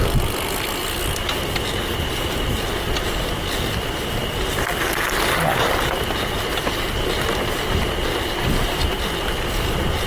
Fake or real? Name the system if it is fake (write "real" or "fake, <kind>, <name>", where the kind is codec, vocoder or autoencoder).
real